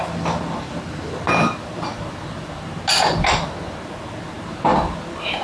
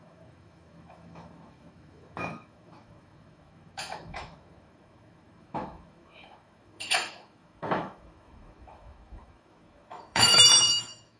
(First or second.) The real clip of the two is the first